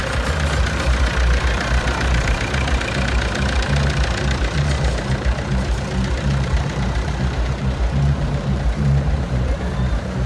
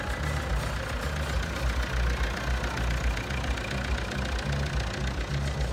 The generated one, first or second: first